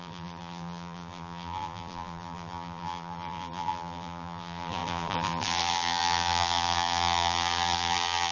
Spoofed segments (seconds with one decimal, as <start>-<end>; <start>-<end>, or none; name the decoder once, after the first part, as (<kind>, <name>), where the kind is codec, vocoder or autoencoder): 0.0-8.3 (vocoder, BigVGAN v2)